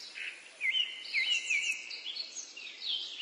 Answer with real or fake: real